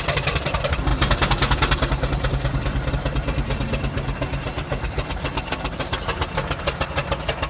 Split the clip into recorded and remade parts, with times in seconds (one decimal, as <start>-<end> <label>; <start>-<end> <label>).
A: 0.0-7.5 recorded